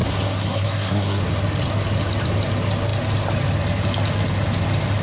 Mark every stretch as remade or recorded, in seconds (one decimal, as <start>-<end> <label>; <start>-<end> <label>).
0.0-1.2 remade; 1.2-5.0 recorded